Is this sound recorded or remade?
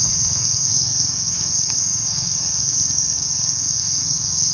remade